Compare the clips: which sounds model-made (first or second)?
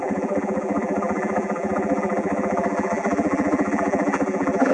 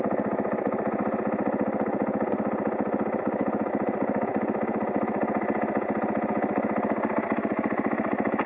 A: first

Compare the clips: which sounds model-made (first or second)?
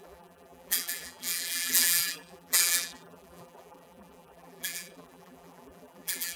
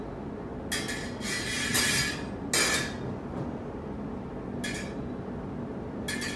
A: first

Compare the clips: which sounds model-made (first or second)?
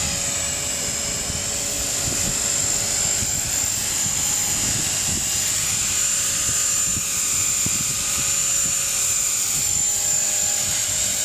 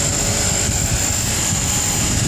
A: second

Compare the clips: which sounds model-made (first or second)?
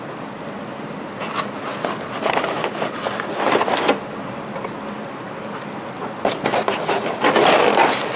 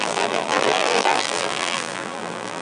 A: second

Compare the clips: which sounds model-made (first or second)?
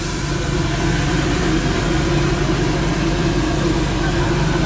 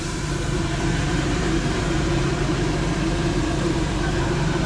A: second